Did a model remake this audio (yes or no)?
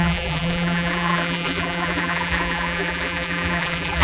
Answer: yes